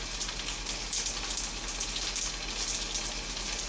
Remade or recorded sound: recorded